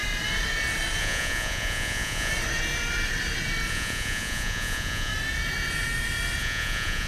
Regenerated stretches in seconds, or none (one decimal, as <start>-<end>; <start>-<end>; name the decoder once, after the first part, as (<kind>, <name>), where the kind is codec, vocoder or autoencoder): 1.0-2.3 (vocoder, Vocos); 3.7-5.1; 6.4-7.1